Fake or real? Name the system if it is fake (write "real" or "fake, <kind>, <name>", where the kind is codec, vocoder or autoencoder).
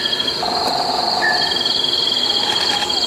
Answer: real